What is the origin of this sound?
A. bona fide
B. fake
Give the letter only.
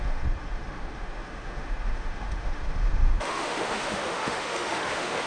B